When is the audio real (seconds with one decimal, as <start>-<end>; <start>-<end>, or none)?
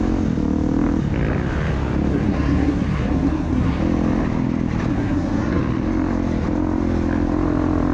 0.0-2.1; 3.8-4.9; 5.6-7.9